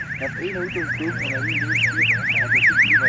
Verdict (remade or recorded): recorded